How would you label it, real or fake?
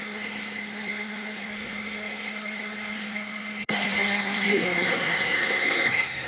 fake